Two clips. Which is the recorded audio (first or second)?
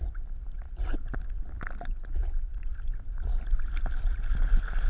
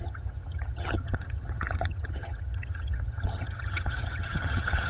first